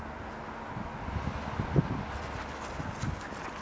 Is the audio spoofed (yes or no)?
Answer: no